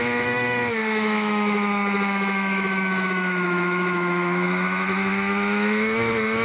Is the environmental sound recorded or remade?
remade